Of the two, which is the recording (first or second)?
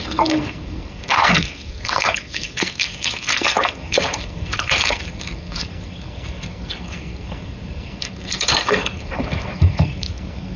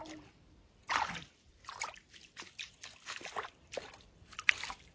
second